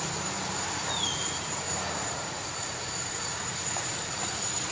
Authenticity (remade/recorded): recorded